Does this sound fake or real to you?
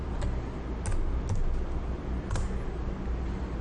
real